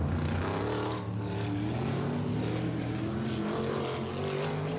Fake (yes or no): no